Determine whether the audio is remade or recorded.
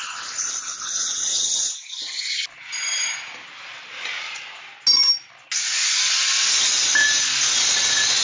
recorded